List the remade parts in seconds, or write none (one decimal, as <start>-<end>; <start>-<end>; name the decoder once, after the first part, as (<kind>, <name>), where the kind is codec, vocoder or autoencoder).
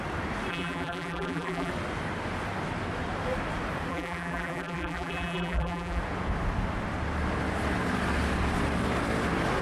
0.5-1.7 (vocoder, BigVGAN v2); 3.9-6.0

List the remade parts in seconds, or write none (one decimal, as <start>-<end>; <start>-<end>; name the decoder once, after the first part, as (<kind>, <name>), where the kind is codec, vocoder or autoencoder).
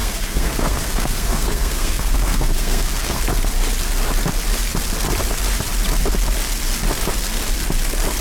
0.0-3.2 (codec, SNAC)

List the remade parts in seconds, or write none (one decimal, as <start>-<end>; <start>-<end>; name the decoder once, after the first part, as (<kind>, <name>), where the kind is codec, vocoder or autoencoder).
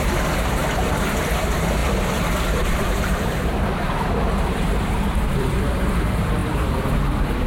0.0-7.5 (vocoder, BigVGAN v2)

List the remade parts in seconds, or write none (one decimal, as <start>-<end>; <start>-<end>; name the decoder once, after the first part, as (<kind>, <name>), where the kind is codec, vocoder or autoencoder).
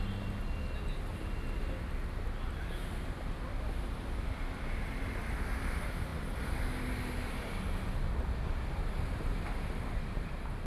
none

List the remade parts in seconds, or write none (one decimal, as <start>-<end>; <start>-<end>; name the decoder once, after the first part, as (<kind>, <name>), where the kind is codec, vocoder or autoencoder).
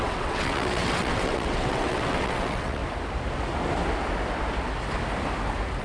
0.0-2.8 (vocoder, WaveNeXt)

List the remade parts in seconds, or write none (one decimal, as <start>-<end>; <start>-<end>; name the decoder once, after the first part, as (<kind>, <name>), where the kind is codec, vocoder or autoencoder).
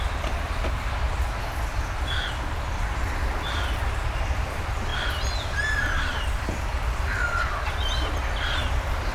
none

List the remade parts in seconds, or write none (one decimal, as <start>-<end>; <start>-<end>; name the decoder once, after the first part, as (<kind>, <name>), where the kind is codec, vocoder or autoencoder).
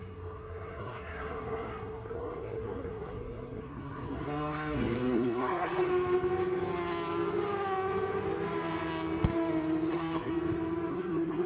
0.0-5.9 (codec, SNAC); 9.9-10.3; 10.9-11.5